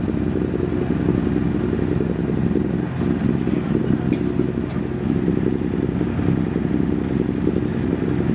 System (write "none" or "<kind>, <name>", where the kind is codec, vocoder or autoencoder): none